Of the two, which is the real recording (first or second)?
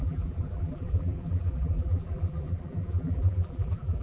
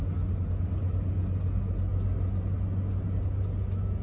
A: second